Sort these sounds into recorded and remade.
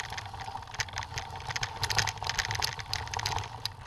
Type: remade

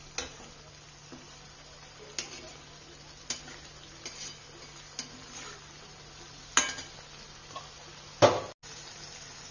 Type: recorded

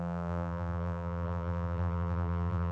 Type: remade